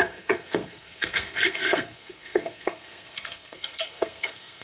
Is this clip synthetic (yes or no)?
yes